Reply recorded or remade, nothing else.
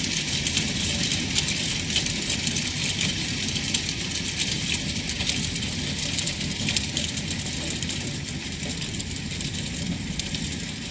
recorded